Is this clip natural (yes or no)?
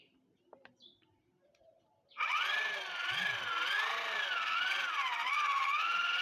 yes